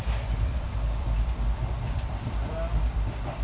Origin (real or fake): fake